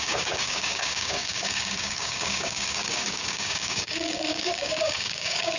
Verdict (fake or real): fake